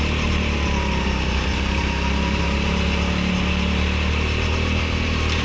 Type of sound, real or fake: real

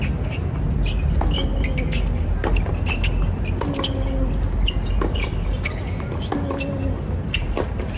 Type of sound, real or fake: real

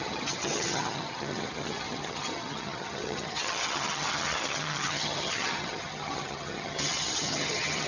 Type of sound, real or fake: fake